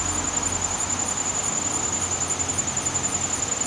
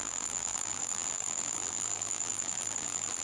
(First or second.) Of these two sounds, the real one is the first